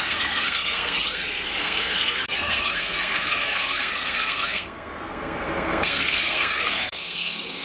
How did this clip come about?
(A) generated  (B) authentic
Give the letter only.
A